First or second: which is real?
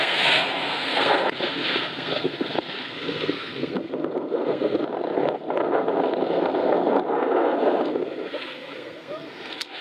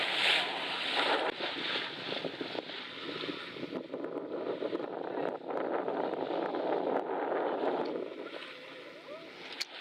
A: second